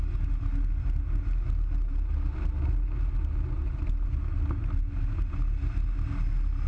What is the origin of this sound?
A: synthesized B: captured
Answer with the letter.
B